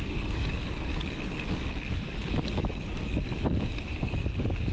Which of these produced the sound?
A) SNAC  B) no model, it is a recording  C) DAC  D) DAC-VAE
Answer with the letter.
C